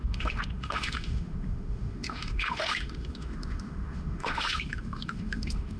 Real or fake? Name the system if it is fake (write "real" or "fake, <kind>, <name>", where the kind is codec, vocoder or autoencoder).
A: fake, autoencoder, DAC-VAE